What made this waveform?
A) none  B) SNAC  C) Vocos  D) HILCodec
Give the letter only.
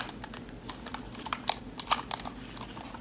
A